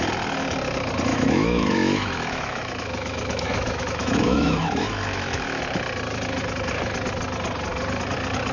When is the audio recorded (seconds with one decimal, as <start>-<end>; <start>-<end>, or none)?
0.0-1.1; 5.6-8.5